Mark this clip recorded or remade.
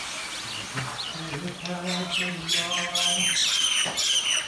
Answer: recorded